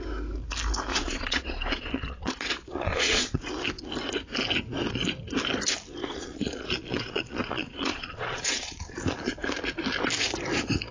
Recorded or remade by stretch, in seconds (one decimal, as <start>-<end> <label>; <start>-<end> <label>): 0.0-0.9 recorded; 0.9-3.5 remade; 3.5-6.0 recorded; 6.0-9.3 remade; 9.3-10.9 recorded